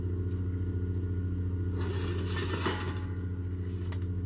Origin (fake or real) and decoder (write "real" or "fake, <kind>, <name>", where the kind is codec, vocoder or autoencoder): real